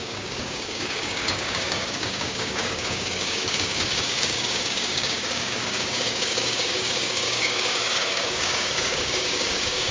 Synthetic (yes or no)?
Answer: yes